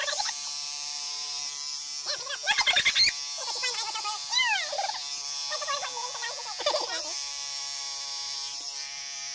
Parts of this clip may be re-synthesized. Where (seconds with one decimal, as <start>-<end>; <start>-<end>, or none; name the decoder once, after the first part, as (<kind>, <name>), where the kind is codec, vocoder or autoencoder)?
none